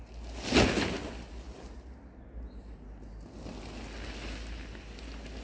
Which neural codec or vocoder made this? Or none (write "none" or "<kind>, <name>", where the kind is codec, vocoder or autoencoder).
none